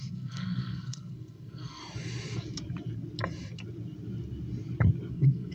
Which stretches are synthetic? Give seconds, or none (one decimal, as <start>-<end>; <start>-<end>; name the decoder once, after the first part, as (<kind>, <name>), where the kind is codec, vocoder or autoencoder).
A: 0.0-1.8 (codec, SNAC); 5.1-5.5